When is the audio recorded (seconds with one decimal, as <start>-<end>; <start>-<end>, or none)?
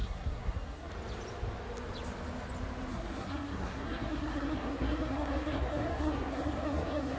0.9-2.9